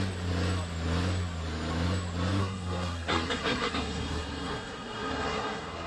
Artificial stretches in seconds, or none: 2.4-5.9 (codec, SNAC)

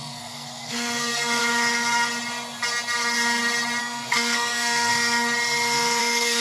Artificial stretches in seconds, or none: 0.0-1.4 (codec, SNAC); 3.8-4.9; 6.0-6.4

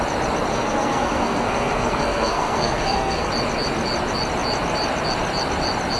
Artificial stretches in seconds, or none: 0.5-3.3 (codec, SNAC)

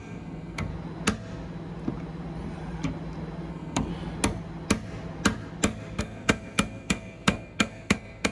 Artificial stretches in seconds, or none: 0.0-0.7 (codec, SNAC); 3.5-3.9; 6.0-8.3

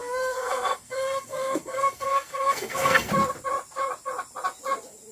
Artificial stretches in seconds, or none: 0.0-3.1 (codec, SNAC)